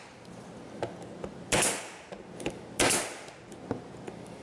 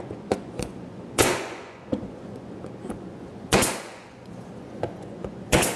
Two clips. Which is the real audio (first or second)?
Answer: first